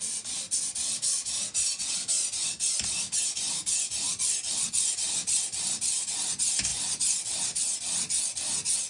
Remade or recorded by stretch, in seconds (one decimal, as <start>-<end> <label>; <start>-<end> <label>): 0.0-8.9 recorded